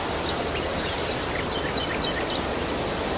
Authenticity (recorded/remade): recorded